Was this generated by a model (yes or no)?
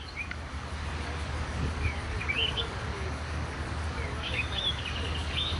yes